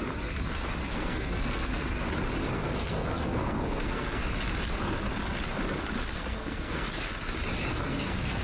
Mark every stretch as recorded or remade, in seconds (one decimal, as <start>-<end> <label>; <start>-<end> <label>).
0.0-0.8 recorded; 0.8-1.9 remade; 1.9-2.4 recorded; 2.4-4.3 remade; 4.3-6.1 recorded; 6.1-6.9 remade; 6.9-7.7 recorded; 7.7-8.4 remade